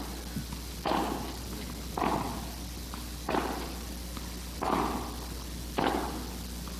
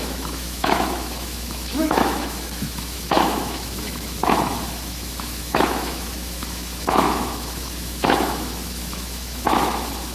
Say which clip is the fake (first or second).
second